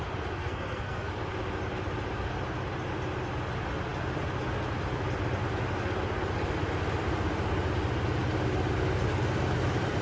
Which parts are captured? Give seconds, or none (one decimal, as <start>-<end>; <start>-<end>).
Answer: 0.0-0.4; 1.1-10.0